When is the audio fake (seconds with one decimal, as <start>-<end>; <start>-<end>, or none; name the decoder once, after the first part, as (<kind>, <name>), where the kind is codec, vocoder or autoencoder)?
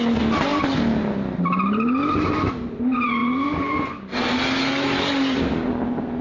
none